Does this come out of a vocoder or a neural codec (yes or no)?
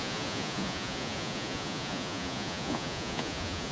yes